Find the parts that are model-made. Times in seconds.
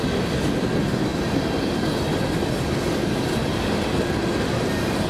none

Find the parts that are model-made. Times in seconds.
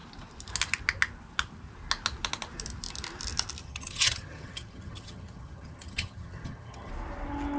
3.6-6.9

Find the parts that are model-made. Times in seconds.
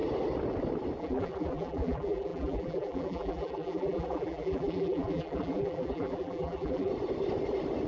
1.0-6.9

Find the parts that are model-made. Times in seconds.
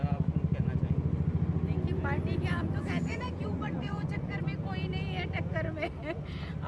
3.0-4.3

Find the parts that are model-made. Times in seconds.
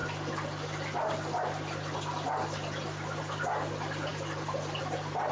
0.0-3.2; 4.1-4.8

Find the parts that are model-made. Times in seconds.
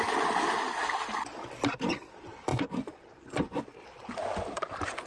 2.5-3.6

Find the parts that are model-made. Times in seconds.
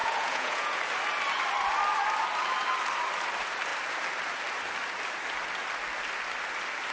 0.0-0.8